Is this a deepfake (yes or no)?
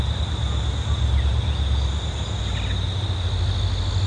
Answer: no